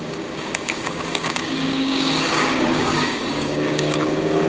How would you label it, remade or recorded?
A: remade